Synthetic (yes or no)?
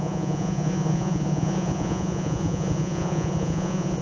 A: yes